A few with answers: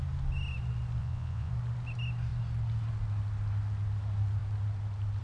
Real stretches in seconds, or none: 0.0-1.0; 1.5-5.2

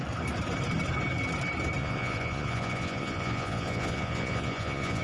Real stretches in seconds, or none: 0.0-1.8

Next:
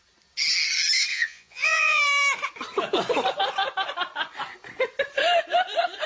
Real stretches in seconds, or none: 0.0-1.1; 2.0-6.1

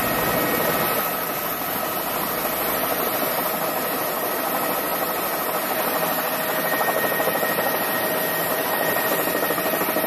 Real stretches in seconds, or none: 0.0-10.1

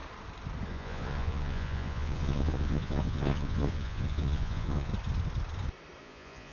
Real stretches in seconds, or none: 0.0-0.7; 4.9-6.0

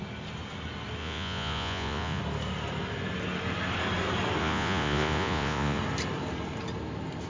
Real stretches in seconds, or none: 0.0-1.0; 2.2-4.4; 5.8-7.3